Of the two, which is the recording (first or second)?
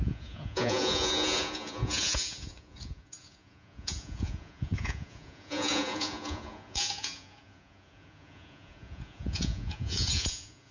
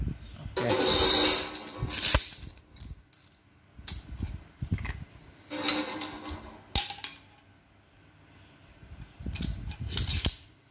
second